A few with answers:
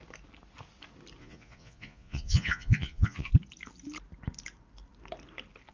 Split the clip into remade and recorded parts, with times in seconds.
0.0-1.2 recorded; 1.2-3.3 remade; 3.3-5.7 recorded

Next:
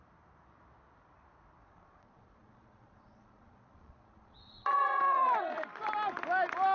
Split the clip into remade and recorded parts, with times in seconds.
0.0-1.6 recorded; 1.6-5.6 remade; 5.6-6.7 recorded

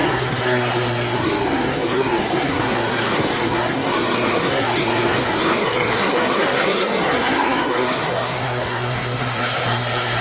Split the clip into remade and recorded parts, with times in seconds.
0.0-10.2 remade

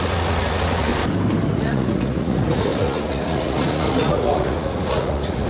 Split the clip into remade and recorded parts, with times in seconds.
0.0-0.9 remade; 0.9-1.5 recorded; 1.5-5.5 remade

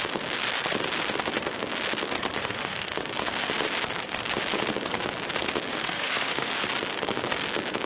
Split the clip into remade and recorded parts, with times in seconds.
0.0-2.4 recorded; 2.4-3.0 remade; 3.0-5.7 recorded; 5.7-6.5 remade; 6.5-7.9 recorded